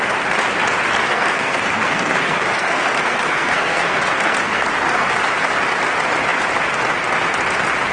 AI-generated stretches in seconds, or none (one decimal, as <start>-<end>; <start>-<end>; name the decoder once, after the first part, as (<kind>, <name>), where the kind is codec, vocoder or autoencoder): 1.1-5.1 (codec, SNAC)